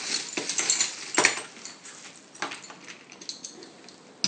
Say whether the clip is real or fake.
real